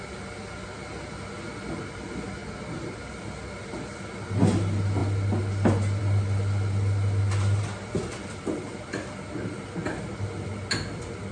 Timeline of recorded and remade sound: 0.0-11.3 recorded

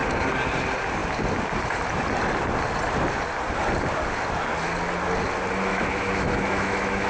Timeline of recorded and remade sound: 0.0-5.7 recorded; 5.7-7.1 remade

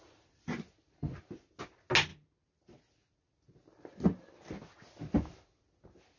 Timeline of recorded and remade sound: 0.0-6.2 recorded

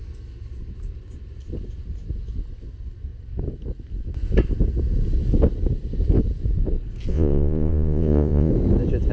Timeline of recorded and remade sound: 0.0-7.1 recorded; 7.1-8.5 remade; 8.5-9.1 recorded

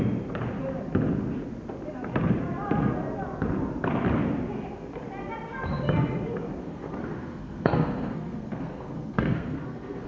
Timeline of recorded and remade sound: 0.0-6.6 recorded; 6.6-10.1 remade

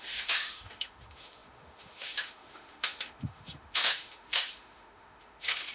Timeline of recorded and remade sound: 0.0-5.7 remade